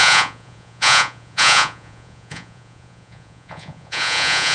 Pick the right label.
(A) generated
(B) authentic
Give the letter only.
A